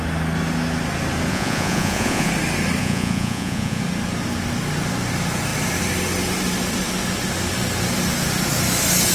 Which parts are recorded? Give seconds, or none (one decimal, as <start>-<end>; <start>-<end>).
0.0-1.3; 2.3-2.8; 3.8-9.1